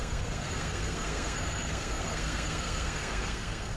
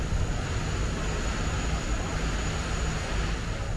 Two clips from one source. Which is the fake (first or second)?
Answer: first